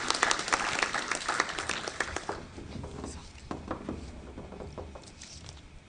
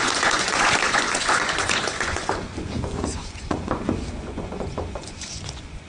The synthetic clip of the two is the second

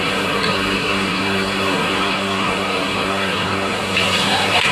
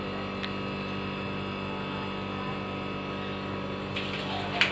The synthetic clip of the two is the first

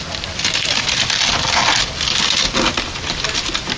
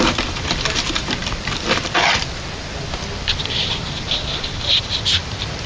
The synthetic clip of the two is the second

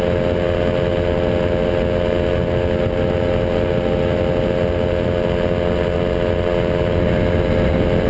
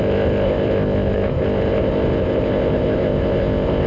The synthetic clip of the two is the second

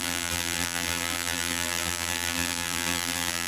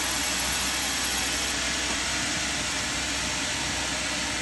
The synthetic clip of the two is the first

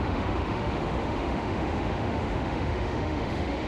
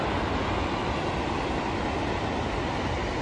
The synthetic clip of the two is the first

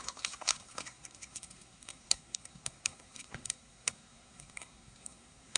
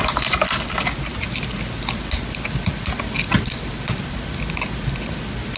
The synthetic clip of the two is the first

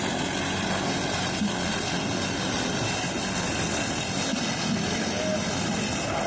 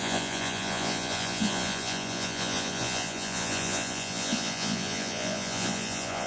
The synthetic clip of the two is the second